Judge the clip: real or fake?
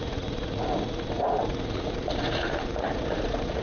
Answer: fake